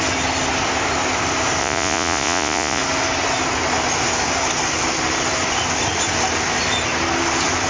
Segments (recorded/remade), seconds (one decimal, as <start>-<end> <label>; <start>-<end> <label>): 0.0-1.6 recorded; 1.6-2.8 remade; 2.8-7.7 recorded